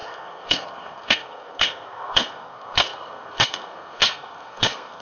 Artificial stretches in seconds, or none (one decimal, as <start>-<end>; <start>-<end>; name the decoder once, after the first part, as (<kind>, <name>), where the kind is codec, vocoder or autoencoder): 0.0-5.0 (codec, SNAC)